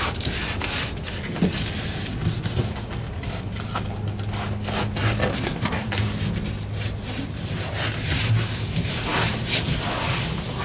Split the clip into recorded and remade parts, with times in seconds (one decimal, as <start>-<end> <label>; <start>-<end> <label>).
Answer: 0.0-5.3 recorded; 5.3-5.9 remade; 5.9-10.6 recorded

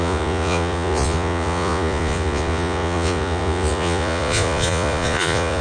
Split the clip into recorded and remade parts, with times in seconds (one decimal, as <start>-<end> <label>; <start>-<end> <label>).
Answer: 0.0-5.6 remade

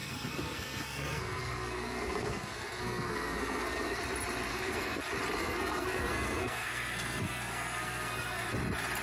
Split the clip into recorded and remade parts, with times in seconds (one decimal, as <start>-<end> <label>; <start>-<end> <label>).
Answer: 0.0-4.0 remade; 4.0-4.5 recorded; 4.5-5.0 remade; 5.0-5.4 recorded; 5.4-8.5 remade; 8.5-9.0 recorded

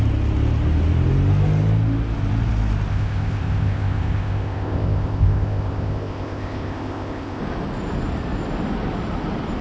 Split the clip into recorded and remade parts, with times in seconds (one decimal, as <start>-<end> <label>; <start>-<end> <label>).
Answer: 0.0-2.9 recorded; 2.9-7.4 remade; 7.4-9.6 recorded

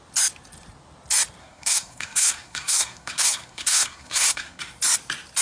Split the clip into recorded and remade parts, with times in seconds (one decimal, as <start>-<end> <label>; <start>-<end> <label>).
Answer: 0.0-1.4 recorded; 1.4-4.6 remade; 4.6-5.4 recorded

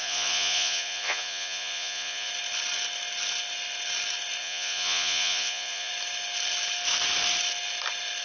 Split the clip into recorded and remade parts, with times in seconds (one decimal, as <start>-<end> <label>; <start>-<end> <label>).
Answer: 0.0-2.3 remade; 2.3-4.4 recorded; 4.4-5.9 remade; 5.9-8.2 recorded